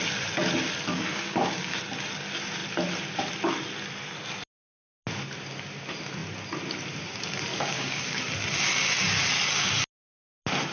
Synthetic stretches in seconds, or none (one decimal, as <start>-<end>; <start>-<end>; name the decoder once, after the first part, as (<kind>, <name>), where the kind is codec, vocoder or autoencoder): 0.9-1.8 (codec, DAC); 7.5-8.2